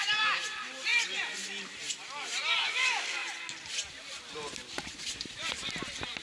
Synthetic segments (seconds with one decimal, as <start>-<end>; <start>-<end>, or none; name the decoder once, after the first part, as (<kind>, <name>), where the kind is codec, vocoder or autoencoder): 0.0-3.2 (vocoder, BigVGAN v2); 3.9-6.2